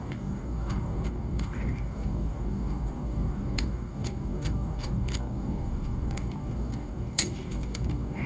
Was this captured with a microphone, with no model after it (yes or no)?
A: no